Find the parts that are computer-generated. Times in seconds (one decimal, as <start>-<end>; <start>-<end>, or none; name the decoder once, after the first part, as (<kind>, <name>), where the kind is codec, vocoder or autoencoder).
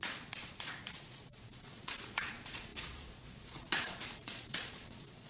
0.0-5.3 (vocoder, Vocos)